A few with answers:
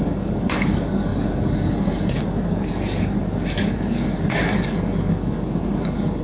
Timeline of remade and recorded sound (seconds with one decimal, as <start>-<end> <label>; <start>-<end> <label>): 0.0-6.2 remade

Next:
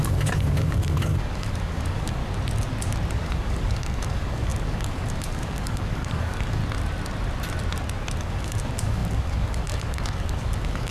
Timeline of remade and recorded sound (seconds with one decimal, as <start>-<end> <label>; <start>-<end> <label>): 0.0-2.2 remade; 2.2-3.1 recorded; 3.1-6.6 remade; 6.6-8.2 recorded; 8.2-10.9 remade

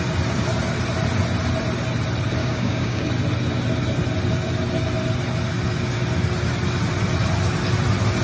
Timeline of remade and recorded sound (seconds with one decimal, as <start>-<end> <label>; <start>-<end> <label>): 0.0-2.4 recorded; 2.4-3.1 remade; 3.1-8.2 recorded